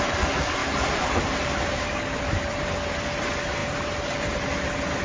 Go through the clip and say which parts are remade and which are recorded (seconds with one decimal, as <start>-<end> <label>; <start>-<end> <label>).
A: 0.0-0.6 recorded; 0.6-2.7 remade; 2.7-3.6 recorded; 3.6-4.4 remade; 4.4-5.0 recorded